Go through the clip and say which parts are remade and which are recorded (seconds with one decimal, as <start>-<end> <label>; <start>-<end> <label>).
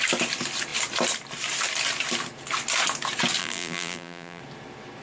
0.0-3.4 recorded; 3.4-4.4 remade; 4.4-5.0 recorded